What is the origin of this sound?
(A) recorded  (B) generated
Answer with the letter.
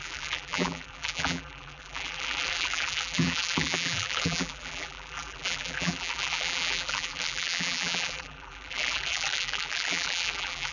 B